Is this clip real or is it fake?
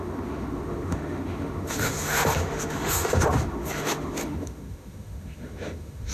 fake